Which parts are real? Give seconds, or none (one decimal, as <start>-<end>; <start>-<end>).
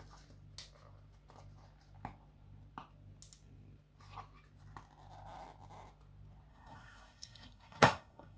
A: 0.0-6.5